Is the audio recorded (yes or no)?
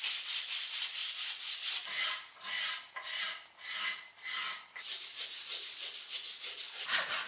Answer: yes